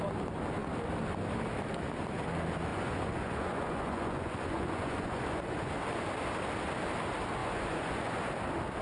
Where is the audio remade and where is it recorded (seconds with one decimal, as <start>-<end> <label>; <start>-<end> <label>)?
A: 0.0-2.7 recorded; 2.7-5.7 remade; 5.7-7.4 recorded; 7.4-8.3 remade; 8.3-8.8 recorded